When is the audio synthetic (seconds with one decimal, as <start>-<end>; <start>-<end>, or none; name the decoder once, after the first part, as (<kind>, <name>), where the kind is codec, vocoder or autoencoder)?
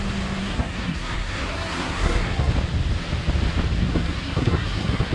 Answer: 0.4-2.5 (codec, SNAC); 3.8-5.1